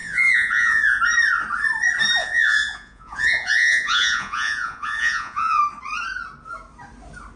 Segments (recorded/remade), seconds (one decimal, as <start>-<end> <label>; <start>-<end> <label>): 0.0-1.0 remade; 1.0-2.2 recorded; 2.2-5.6 remade; 5.6-7.4 recorded